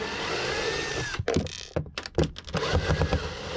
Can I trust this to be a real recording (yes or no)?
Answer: yes